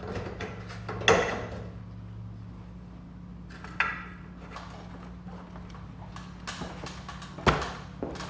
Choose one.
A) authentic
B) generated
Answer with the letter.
A